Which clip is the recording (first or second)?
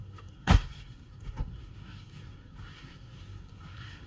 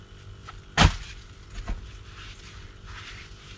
second